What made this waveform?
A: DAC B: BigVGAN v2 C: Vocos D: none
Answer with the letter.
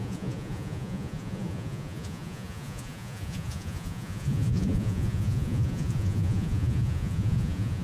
C